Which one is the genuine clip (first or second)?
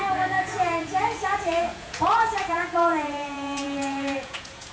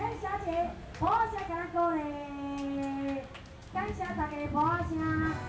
second